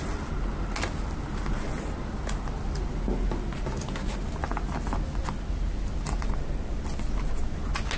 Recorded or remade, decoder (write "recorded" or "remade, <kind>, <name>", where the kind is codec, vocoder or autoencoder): recorded